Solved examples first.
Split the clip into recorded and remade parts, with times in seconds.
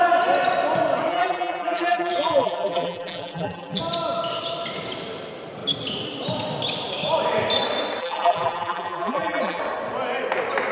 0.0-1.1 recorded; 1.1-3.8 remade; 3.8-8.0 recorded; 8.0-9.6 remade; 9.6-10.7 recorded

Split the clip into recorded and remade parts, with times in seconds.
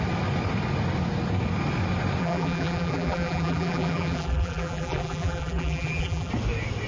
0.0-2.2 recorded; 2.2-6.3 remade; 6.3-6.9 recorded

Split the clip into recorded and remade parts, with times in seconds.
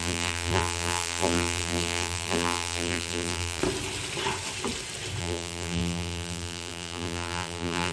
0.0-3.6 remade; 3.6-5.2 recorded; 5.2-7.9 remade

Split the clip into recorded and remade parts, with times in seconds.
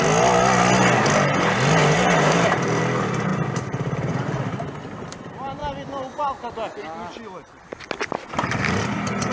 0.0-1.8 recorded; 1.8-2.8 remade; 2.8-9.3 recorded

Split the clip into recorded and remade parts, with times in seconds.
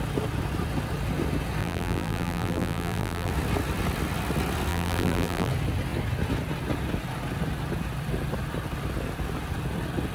0.0-1.6 recorded; 1.6-3.3 remade; 3.3-4.7 recorded; 4.7-5.5 remade; 5.5-10.1 recorded